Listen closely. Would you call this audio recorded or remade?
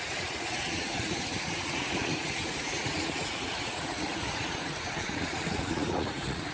remade